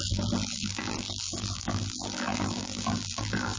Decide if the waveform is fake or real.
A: fake